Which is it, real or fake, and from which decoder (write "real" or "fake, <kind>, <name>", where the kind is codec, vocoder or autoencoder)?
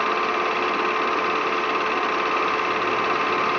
real